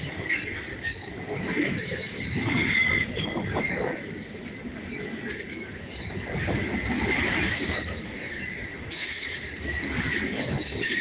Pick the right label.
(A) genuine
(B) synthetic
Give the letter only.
B